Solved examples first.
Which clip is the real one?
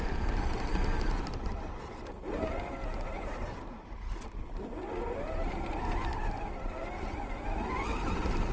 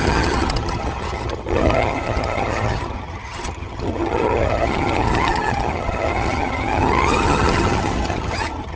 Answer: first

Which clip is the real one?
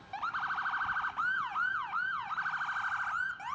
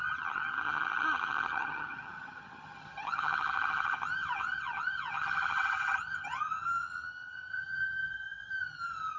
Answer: first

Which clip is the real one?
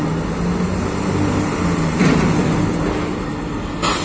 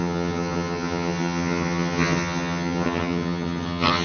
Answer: first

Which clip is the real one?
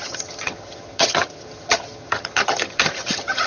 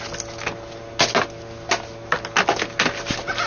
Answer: second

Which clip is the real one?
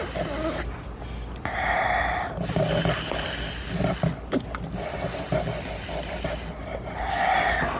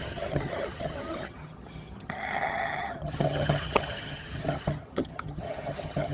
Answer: first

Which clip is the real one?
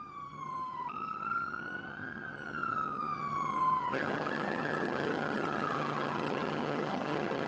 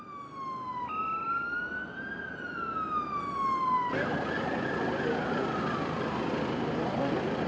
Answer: second